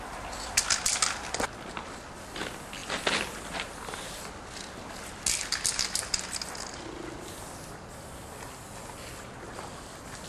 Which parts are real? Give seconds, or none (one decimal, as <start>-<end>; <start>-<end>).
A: 0.0-10.3